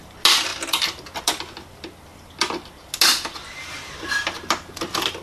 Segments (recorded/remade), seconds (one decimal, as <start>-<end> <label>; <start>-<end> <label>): 0.0-5.2 recorded